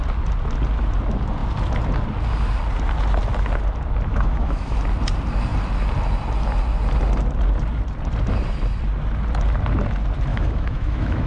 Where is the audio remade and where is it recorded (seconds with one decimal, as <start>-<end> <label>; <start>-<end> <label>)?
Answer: 0.0-4.1 recorded; 4.1-4.8 remade; 4.8-10.3 recorded; 10.3-11.3 remade